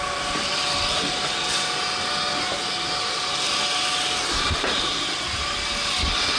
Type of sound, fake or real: real